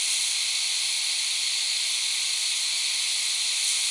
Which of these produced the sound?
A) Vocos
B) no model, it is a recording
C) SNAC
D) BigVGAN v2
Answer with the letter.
B